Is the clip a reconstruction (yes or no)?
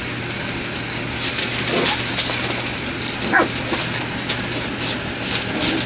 no